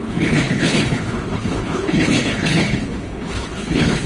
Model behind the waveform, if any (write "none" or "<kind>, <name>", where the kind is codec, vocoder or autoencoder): codec, HILCodec